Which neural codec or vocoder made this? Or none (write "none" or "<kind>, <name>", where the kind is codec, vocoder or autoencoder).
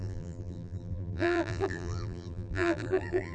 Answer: vocoder, BigVGAN v2